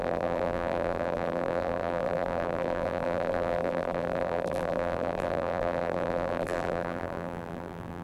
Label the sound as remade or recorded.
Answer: remade